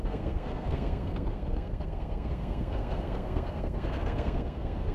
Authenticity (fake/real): fake